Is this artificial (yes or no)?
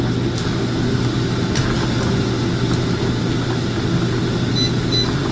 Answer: no